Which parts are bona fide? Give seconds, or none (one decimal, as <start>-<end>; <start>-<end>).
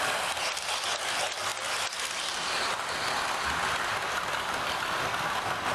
0.0-5.7